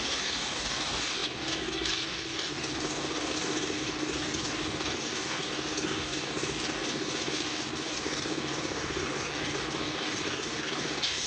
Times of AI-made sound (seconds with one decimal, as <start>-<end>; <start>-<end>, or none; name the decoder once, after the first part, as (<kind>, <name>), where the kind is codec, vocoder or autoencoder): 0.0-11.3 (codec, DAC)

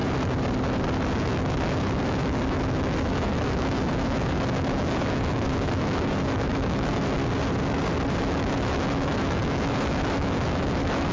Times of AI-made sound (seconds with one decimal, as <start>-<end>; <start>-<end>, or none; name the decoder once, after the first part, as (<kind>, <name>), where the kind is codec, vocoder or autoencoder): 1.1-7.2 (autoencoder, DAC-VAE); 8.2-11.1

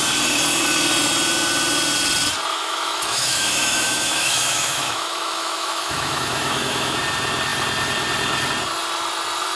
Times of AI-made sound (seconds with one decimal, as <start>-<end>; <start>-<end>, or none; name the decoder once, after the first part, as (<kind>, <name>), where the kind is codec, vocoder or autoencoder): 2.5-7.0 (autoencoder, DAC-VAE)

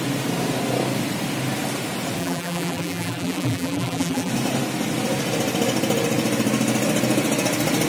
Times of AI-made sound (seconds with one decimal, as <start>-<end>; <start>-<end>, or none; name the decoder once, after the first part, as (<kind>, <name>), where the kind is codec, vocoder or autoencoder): 2.2-4.3 (vocoder, BigVGAN v2)

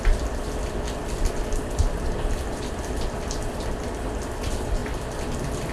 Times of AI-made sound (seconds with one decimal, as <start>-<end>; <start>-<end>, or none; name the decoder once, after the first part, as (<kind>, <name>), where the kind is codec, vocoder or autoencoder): none